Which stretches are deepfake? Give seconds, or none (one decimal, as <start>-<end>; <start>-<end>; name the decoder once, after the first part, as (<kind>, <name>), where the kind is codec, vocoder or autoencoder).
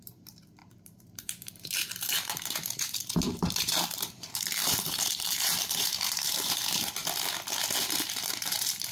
0.0-7.0 (vocoder, BigVGAN v2); 7.8-8.9